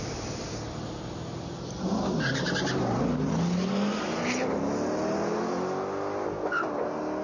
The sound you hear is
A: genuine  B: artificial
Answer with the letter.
A